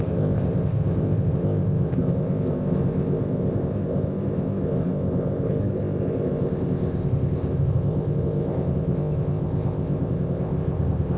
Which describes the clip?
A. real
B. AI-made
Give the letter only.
B